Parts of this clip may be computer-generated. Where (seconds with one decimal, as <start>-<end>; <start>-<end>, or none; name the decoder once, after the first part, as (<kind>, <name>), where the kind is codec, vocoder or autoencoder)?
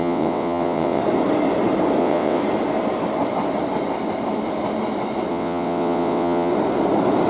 0.0-1.0 (vocoder, WaveNeXt); 2.0-2.4; 5.3-6.5